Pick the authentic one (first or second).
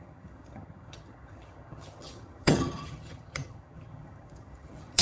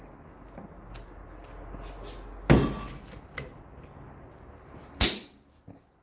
second